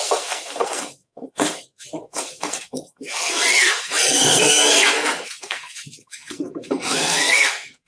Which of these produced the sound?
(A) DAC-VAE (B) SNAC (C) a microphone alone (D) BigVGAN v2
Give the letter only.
B